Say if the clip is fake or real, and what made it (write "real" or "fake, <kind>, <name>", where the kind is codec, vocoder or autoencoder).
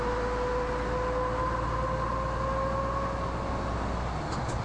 real